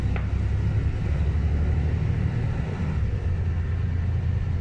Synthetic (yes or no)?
no